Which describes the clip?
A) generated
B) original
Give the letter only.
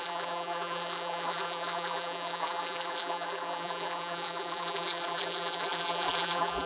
A